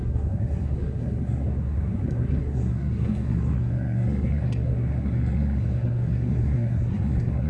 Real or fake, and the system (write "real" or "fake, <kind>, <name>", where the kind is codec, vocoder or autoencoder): fake, codec, SNAC